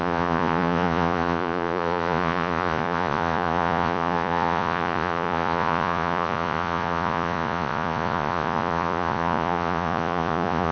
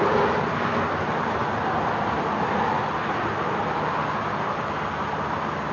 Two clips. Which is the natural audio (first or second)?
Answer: second